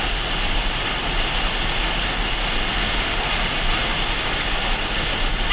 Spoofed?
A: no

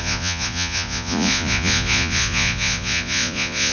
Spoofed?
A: yes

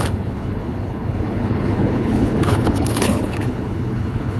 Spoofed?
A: yes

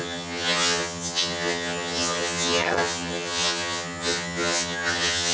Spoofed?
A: yes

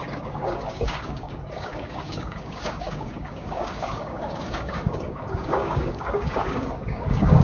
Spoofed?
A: yes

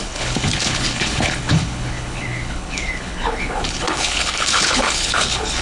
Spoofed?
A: yes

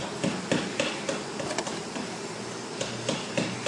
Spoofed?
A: no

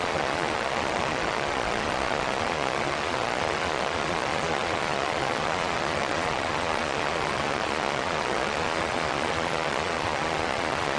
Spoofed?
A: yes